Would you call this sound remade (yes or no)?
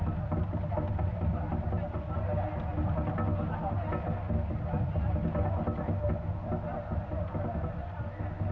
no